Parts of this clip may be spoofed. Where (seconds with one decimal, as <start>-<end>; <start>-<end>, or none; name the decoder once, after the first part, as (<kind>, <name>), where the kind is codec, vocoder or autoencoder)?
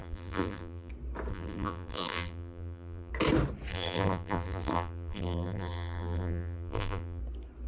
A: 0.0-0.9 (vocoder, BigVGAN v2); 1.3-3.1; 3.7-7.2